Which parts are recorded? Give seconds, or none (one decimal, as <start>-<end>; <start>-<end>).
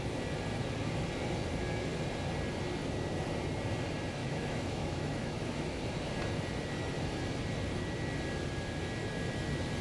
0.0-4.2; 5.8-9.8